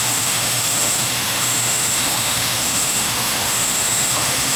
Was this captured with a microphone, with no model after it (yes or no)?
no